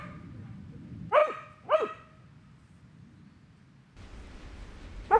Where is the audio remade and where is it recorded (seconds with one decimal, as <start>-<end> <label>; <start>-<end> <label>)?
0.0-1.2 remade; 1.2-4.3 recorded; 4.3-5.2 remade

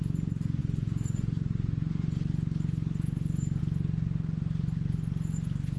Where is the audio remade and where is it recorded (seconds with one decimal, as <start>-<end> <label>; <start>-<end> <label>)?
0.0-5.8 recorded

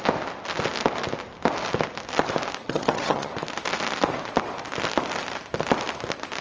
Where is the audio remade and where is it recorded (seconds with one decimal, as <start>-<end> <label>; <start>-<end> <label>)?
0.0-2.6 recorded; 2.6-3.3 remade; 3.3-6.4 recorded

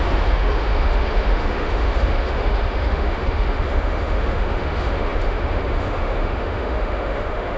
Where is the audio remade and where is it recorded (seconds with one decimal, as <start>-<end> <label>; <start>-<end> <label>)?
0.0-7.6 remade

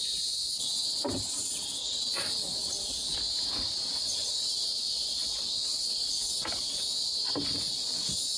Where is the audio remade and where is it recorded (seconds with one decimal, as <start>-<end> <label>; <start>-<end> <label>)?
0.0-1.8 recorded; 1.8-2.7 remade; 2.7-4.0 recorded; 4.0-4.5 remade; 4.5-8.4 recorded

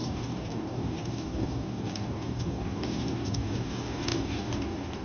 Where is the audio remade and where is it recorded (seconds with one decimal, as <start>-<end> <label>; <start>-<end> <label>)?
0.0-5.0 remade

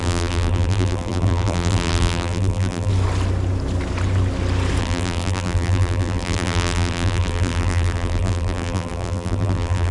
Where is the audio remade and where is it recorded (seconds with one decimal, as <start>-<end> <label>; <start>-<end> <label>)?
0.0-2.9 remade; 2.9-4.8 recorded; 4.8-9.9 remade